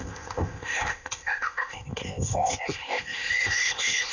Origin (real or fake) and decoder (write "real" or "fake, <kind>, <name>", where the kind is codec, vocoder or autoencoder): fake, codec, ZipCodec